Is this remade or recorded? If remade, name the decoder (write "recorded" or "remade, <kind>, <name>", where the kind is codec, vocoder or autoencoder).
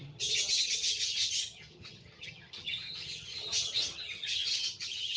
remade, vocoder, HiFi-GAN